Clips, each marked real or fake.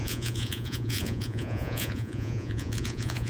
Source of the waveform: fake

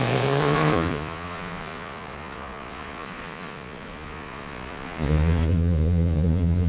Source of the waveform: fake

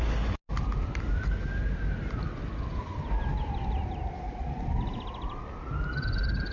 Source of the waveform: real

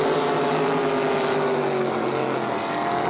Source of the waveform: real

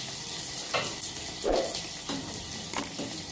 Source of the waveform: real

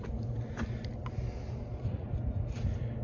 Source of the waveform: real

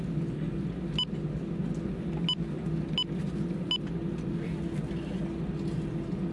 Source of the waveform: real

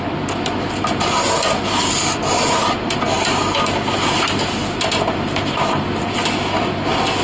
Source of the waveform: real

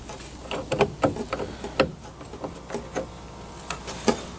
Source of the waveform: real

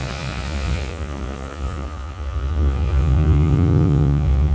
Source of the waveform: fake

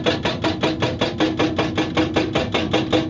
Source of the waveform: real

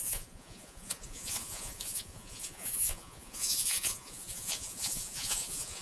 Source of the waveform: fake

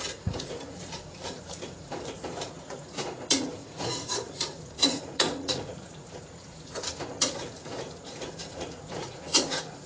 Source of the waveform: fake